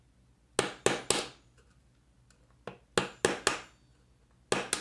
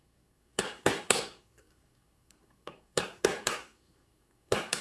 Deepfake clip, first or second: second